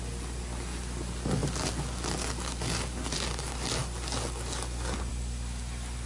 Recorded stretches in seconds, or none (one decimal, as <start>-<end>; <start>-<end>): 0.0-6.1